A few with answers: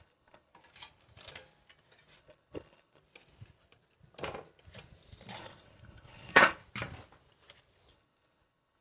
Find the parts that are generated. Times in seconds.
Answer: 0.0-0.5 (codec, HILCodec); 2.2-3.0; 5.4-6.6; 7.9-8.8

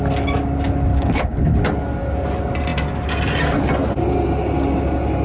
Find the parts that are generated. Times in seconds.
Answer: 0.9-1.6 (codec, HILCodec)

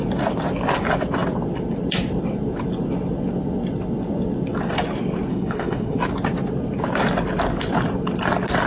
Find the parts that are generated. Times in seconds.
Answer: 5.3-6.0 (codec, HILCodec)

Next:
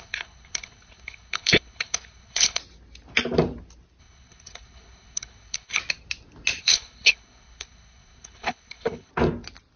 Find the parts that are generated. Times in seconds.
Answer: 0.0-2.6 (codec, HILCodec); 4.0-5.8; 6.6-9.1

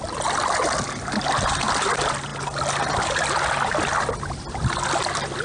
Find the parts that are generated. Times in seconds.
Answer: none